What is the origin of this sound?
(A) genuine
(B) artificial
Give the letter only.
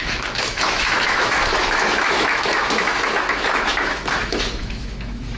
B